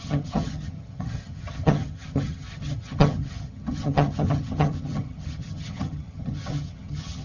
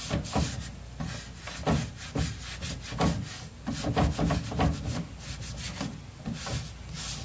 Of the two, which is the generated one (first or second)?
first